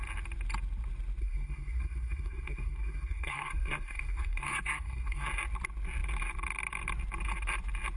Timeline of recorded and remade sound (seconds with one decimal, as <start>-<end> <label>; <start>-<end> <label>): 0.0-1.2 recorded; 1.2-5.3 remade; 5.3-8.0 recorded